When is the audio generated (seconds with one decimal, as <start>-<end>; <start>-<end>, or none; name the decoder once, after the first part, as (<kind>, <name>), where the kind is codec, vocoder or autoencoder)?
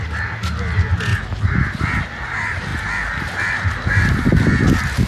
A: none